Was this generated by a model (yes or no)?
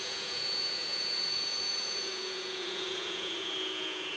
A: yes